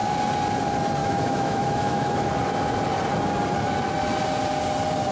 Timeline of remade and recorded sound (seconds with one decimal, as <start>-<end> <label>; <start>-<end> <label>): 0.0-1.0 recorded; 1.0-2.3 remade; 2.3-5.1 recorded